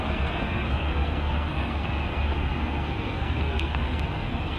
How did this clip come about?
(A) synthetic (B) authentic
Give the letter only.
A